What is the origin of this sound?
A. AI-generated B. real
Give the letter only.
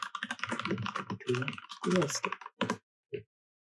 B